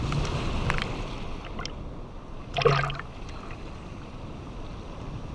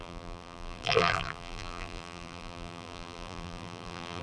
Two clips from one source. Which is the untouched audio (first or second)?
first